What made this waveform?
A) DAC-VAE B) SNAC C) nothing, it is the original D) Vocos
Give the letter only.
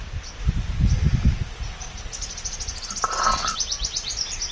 C